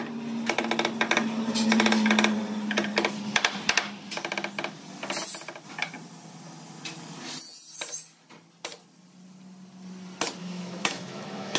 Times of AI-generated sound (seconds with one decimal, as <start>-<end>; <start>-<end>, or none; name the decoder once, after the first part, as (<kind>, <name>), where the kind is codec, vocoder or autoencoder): 10.4-11.6 (autoencoder, DAC-VAE)